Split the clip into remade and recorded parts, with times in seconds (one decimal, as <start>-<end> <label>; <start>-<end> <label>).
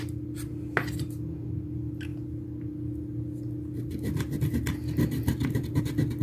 0.0-6.2 recorded